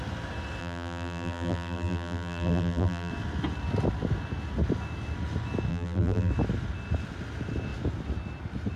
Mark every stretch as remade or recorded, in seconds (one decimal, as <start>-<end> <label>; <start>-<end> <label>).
0.0-0.6 recorded; 0.6-3.1 remade; 3.1-5.7 recorded; 5.7-6.3 remade; 6.3-8.8 recorded